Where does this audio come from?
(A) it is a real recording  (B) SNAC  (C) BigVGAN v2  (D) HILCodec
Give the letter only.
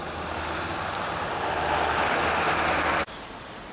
A